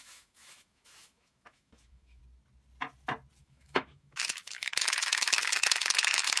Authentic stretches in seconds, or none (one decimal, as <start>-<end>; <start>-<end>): 2.2-3.4

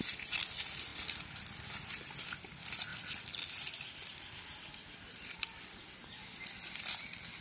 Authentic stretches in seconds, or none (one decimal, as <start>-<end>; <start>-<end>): 0.0-7.4

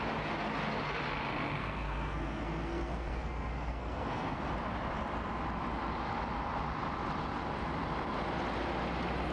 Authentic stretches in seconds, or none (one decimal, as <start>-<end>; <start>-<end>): 0.0-1.6; 4.4-9.3